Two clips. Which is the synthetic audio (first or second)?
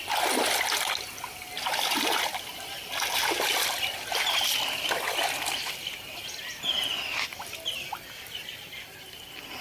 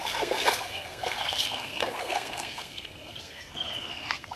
second